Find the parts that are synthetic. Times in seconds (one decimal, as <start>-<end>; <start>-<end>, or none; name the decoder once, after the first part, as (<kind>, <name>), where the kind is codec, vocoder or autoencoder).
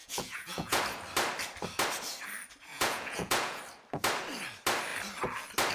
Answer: 0.0-0.8 (vocoder, Vocos); 2.7-3.6